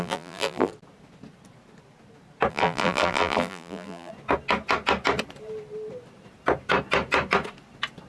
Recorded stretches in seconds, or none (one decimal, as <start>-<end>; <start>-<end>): 0.7-2.5; 4.1-8.1